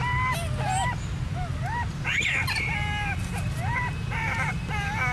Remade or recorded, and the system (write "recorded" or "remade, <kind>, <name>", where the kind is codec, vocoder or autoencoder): recorded